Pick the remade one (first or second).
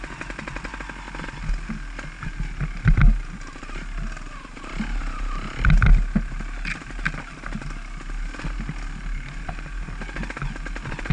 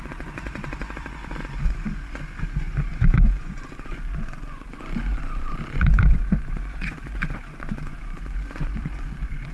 second